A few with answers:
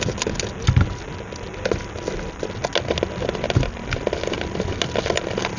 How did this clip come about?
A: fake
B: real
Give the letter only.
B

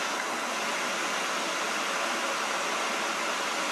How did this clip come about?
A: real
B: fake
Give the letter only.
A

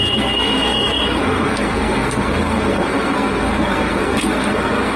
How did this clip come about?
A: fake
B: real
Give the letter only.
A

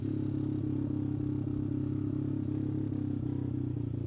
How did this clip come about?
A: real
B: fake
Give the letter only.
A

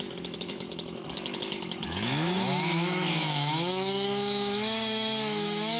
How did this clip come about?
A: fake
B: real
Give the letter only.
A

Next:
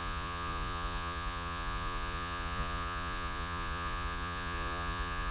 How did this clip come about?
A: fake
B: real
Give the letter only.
A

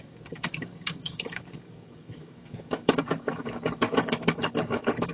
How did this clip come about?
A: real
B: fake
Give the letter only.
B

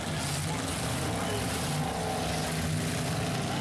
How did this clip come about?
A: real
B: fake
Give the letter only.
A